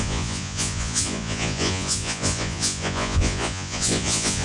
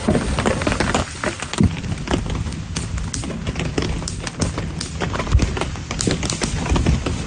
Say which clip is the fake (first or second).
first